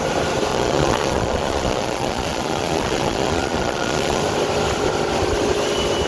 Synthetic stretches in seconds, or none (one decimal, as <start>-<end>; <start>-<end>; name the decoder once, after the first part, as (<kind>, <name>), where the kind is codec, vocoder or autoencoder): 0.5-4.2 (vocoder, Vocos)

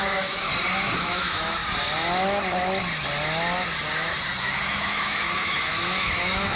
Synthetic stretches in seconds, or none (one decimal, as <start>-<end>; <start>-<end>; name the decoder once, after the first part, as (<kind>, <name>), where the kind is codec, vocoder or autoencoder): 0.0-0.5 (autoencoder, DAC-VAE); 1.0-1.6; 4.4-6.6

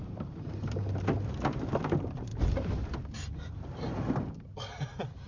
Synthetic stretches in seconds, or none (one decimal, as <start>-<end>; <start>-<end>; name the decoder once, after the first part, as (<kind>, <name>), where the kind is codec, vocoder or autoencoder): 0.0-5.3 (vocoder, BigVGAN v2)

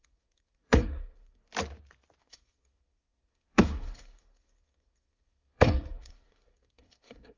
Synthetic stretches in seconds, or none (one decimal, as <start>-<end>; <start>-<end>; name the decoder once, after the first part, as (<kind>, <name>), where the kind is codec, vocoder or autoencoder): 0.0-1.4 (codec, SNAC); 2.2-7.4

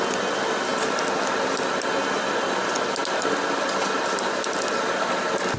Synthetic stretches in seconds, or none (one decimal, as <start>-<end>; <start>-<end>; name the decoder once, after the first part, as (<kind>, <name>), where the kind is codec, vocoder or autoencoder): none

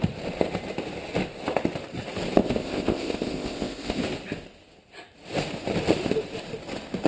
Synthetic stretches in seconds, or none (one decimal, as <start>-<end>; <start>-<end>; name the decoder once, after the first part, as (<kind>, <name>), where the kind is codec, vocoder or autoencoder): 2.4-4.0 (codec, ZipCodec)

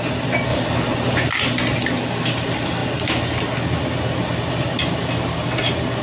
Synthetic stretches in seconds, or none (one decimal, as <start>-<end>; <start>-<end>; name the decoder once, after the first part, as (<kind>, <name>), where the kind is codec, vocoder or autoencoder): none

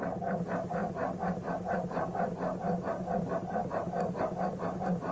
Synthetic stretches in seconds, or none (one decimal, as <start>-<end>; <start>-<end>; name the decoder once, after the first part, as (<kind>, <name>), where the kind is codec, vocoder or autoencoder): none